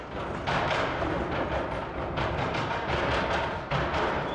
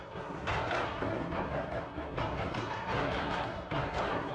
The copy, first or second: second